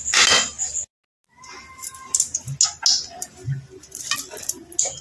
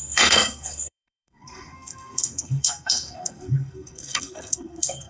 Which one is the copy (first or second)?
second